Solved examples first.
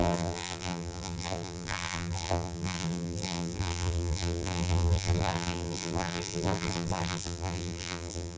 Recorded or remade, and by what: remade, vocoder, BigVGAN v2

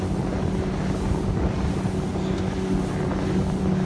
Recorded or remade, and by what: recorded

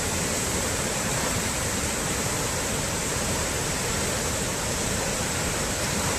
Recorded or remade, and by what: remade, vocoder, BigVGAN v2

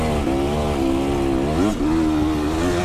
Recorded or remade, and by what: recorded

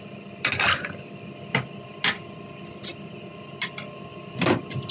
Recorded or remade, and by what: recorded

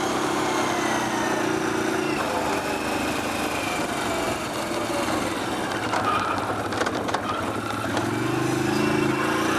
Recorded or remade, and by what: recorded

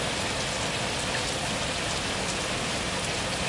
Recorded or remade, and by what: recorded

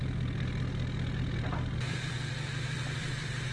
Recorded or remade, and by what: remade, vocoder, BigVGAN v2